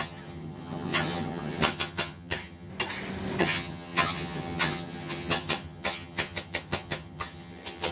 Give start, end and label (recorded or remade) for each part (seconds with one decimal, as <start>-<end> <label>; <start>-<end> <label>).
0.0-2.7 remade; 2.7-3.4 recorded; 3.4-7.9 remade